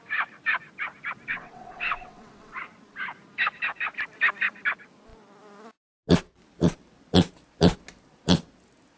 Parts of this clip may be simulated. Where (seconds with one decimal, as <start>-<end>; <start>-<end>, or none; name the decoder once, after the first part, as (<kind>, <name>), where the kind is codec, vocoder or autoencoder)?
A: 1.3-2.6 (vocoder, WaveNeXt)